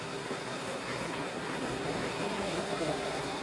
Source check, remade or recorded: remade